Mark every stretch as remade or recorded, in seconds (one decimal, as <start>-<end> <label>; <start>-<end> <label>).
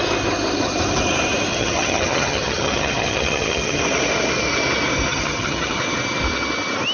0.0-1.5 recorded; 1.5-3.8 remade; 3.8-5.1 recorded; 5.1-5.8 remade; 5.8-6.9 recorded